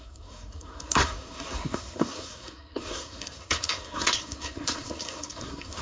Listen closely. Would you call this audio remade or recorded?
remade